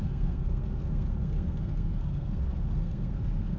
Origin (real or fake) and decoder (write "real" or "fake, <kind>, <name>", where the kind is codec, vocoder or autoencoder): fake, codec, SNAC